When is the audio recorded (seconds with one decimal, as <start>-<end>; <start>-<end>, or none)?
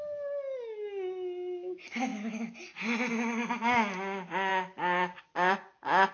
0.0-6.1